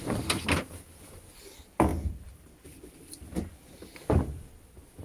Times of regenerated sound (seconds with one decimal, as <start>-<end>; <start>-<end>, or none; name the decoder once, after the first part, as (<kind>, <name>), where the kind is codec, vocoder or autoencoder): none